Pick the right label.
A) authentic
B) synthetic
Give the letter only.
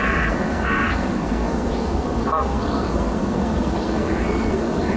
B